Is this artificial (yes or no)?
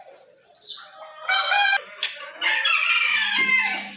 no